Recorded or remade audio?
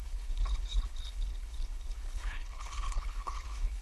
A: remade